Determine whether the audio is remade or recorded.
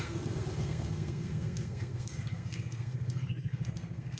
remade